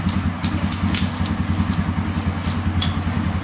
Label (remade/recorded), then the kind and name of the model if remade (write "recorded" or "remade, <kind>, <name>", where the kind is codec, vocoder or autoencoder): recorded